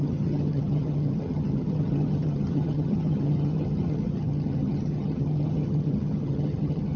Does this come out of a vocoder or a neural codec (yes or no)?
yes